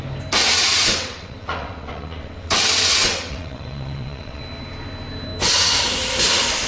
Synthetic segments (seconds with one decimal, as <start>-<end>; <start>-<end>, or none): 0.4-4.4